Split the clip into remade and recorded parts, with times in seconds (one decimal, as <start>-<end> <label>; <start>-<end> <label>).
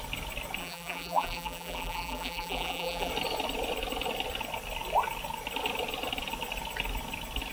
0.0-0.6 recorded; 0.6-3.1 remade; 3.1-7.5 recorded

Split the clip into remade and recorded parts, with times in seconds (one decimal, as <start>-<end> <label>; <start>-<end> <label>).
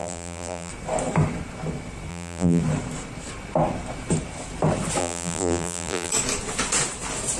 0.0-0.7 remade; 0.7-2.1 recorded; 2.1-2.6 remade; 2.6-5.0 recorded; 5.0-6.1 remade; 6.1-7.4 recorded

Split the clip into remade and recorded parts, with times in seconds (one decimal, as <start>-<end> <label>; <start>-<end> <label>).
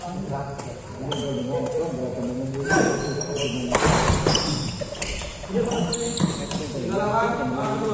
0.0-2.1 remade; 2.1-6.6 recorded; 6.6-7.9 remade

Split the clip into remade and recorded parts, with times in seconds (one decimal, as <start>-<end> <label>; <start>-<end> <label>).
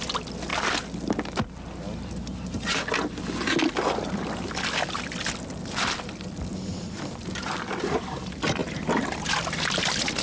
0.0-0.5 remade; 0.5-4.4 recorded; 4.4-8.6 remade; 8.6-10.2 recorded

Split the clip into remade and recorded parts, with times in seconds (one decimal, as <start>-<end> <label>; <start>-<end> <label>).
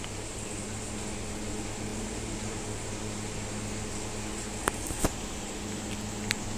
0.0-1.9 recorded; 1.9-2.6 remade; 2.6-6.6 recorded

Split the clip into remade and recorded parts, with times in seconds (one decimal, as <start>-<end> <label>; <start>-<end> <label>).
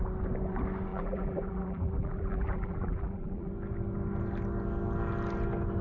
0.0-0.9 recorded; 0.9-3.5 remade; 3.5-5.8 recorded